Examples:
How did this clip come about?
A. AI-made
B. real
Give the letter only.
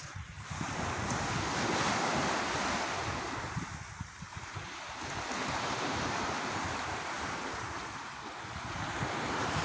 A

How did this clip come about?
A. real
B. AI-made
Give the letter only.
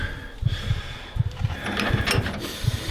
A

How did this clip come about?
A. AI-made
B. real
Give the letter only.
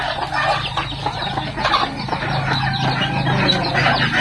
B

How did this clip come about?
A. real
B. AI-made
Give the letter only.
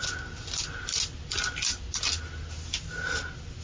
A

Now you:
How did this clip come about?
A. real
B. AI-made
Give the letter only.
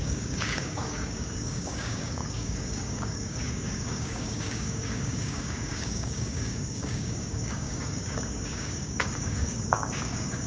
B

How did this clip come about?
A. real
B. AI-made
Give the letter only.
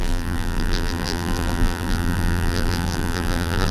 B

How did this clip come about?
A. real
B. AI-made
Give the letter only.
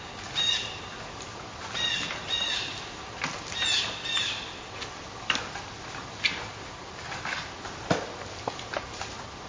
A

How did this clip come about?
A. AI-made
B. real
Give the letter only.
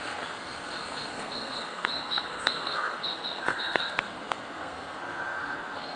A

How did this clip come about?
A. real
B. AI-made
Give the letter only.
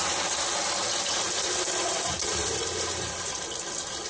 A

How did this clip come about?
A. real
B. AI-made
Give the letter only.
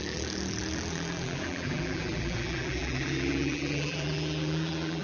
B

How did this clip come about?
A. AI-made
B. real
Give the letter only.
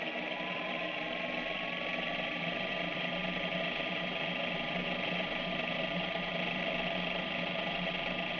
B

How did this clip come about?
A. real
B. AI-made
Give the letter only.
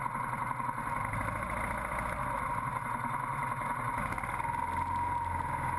A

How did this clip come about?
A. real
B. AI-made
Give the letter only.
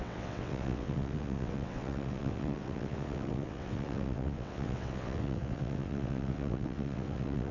B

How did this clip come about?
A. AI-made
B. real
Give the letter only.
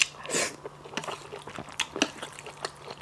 B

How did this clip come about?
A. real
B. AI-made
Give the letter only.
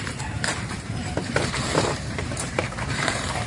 B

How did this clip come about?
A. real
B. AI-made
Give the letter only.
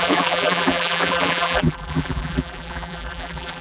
B